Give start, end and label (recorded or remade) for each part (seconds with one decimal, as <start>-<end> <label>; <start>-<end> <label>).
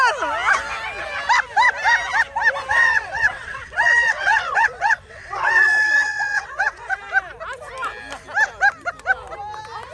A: 0.0-2.7 recorded; 2.7-7.0 remade; 7.0-9.9 recorded